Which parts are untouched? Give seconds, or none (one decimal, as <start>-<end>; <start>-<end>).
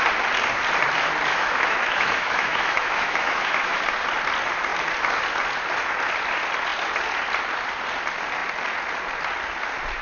0.0-1.3; 3.8-10.0